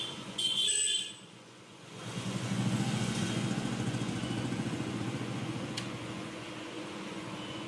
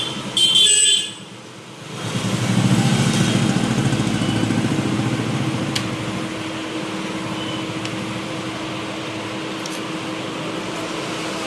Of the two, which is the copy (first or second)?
first